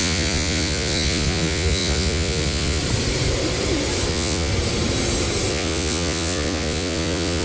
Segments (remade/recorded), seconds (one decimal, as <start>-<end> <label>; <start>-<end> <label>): 0.0-2.8 remade; 2.8-4.1 recorded; 4.1-4.5 remade; 4.5-5.5 recorded; 5.5-7.4 remade